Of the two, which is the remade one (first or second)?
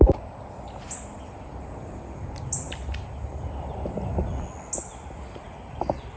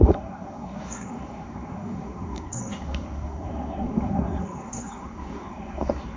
second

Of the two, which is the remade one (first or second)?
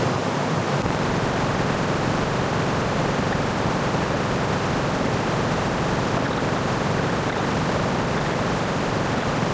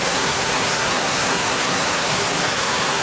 second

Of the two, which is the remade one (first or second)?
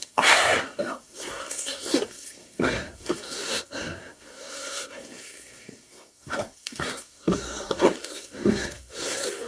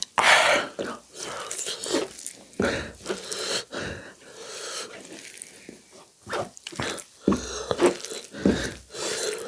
first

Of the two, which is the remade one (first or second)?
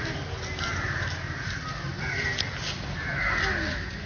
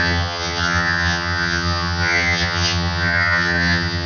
second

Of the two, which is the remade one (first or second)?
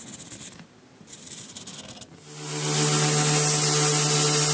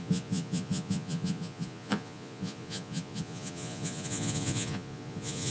second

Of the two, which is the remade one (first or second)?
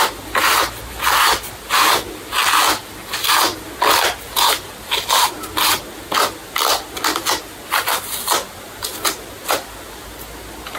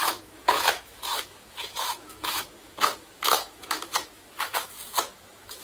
second